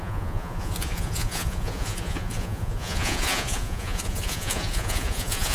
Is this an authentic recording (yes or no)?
no